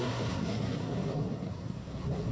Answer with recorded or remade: remade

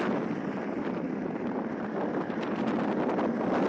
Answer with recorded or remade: recorded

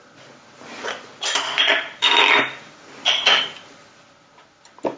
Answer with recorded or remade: recorded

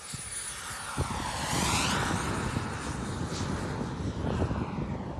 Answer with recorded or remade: recorded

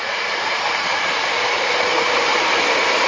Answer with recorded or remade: remade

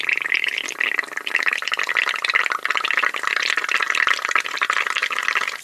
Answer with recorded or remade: recorded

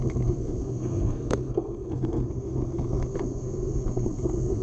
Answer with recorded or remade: remade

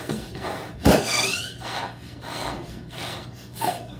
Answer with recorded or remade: remade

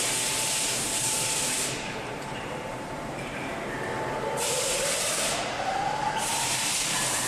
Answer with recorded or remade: remade